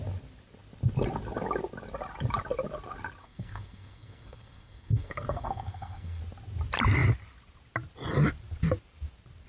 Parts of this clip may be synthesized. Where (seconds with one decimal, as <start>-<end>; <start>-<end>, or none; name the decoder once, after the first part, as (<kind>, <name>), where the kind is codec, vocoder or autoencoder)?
3.2-6.2 (codec, SNAC)